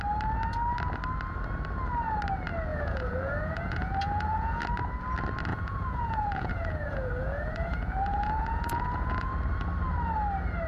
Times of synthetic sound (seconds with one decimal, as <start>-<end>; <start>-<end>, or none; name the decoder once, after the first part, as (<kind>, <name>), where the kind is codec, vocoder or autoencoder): 2.7-4.6 (vocoder, Vocos); 5.5-9.3

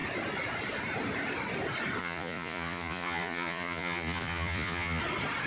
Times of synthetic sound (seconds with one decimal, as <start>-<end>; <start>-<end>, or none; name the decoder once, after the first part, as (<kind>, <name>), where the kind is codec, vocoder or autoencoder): 2.0-5.0 (vocoder, Vocos)

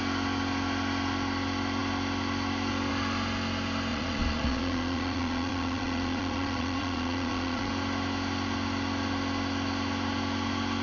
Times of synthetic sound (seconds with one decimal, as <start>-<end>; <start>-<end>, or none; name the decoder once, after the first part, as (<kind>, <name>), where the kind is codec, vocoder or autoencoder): 3.9-7.7 (vocoder, Vocos)

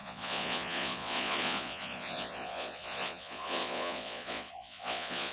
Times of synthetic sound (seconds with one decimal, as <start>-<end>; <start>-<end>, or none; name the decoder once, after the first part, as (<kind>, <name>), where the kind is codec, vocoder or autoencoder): 0.0-5.3 (vocoder, Vocos)